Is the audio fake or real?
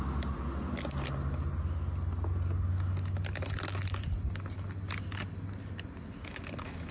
real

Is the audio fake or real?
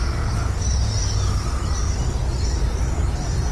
real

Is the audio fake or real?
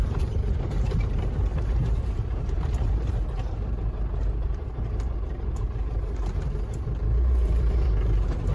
fake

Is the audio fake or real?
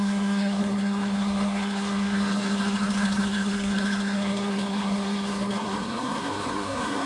fake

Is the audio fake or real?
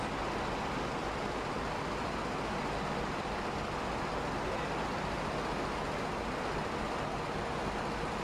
real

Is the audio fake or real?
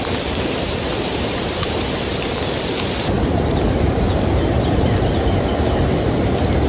fake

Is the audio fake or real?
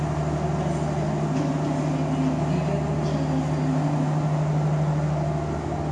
real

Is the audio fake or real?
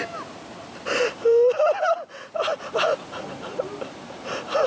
fake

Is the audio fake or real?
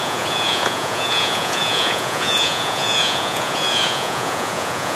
fake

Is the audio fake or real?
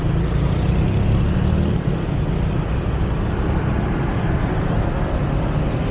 real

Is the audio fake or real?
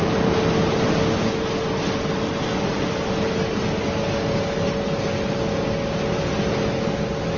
real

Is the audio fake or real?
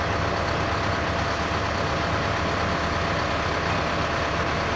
real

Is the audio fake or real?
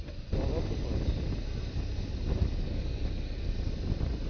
real